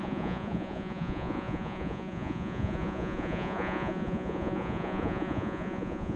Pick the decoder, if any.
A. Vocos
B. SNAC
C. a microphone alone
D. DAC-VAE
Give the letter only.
A